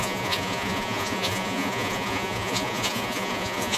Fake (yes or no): yes